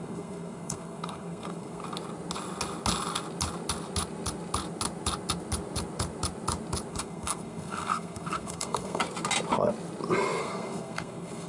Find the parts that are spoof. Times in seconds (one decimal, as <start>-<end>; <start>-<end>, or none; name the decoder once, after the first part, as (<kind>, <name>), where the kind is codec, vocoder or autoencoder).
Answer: 0.0-1.8 (codec, SNAC); 6.9-9.0; 10.4-11.5